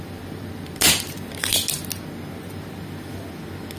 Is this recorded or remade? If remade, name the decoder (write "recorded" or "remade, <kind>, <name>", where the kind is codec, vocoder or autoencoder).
recorded